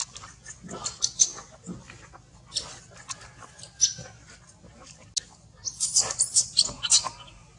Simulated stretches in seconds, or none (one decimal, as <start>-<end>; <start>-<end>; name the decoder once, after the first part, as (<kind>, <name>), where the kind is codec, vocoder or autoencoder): none